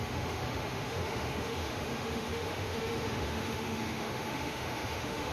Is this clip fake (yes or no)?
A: yes